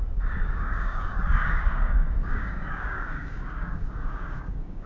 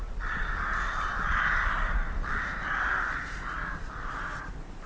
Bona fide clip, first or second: second